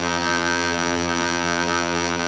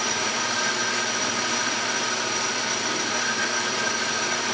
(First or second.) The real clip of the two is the second